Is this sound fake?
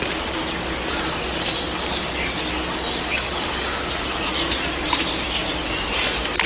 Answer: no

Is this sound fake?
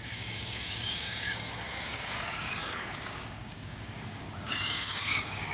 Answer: yes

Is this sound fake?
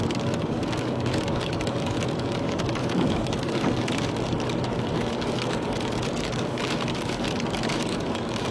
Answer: yes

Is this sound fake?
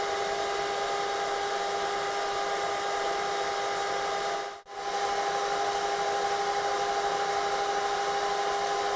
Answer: no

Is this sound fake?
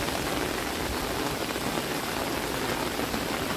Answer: no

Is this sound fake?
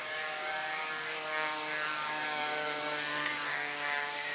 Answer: yes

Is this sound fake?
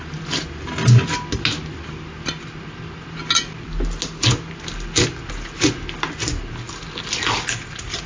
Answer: no